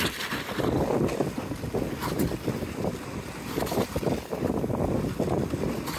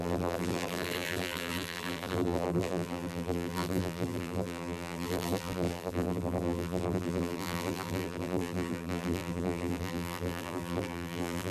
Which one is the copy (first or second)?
second